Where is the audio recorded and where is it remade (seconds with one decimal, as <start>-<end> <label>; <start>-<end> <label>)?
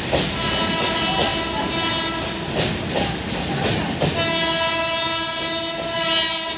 0.0-6.6 recorded